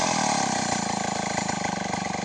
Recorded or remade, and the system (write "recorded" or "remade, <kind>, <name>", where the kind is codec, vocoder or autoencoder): recorded